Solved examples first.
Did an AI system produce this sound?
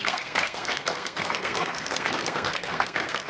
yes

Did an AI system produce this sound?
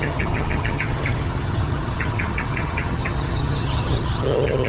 yes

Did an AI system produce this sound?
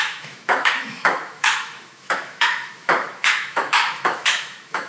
yes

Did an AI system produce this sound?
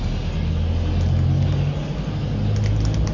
no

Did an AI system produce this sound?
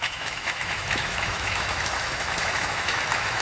yes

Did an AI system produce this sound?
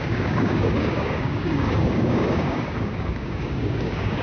yes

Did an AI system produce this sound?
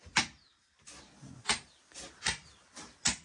no